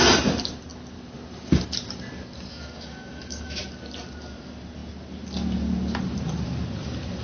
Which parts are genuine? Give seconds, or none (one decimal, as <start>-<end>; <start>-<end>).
0.0-2.5; 3.6-7.2